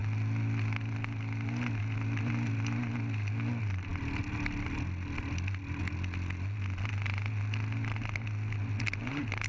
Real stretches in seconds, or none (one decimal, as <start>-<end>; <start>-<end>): 0.0-9.5